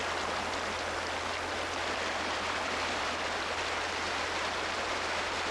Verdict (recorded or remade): recorded